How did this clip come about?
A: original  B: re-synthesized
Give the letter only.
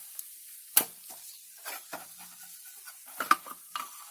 A